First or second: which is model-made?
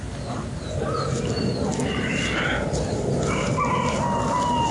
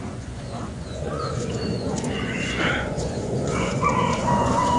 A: second